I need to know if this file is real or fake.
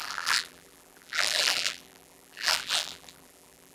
fake